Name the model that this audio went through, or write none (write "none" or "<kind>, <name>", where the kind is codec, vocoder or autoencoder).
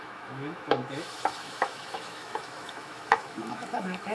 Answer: autoencoder, DAC-VAE